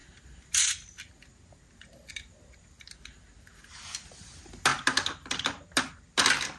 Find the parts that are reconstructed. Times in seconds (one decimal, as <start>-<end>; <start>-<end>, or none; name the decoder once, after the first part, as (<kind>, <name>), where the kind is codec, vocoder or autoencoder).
none